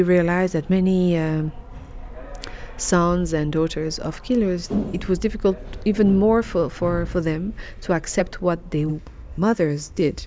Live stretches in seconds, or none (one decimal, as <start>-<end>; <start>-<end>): 0.0-8.9